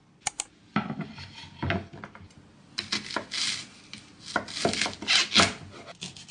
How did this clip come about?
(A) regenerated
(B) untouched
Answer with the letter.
B